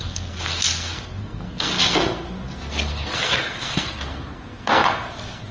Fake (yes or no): yes